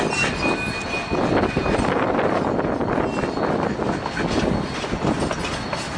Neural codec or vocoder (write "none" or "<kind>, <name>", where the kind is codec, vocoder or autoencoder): none